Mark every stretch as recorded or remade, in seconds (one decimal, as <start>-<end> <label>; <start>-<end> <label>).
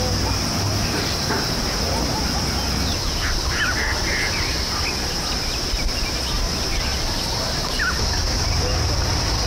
0.0-9.5 recorded